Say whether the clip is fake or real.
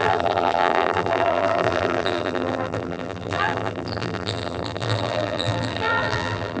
fake